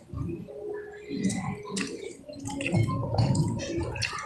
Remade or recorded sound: recorded